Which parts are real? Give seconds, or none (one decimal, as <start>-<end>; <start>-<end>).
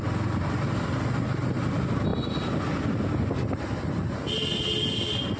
0.0-5.4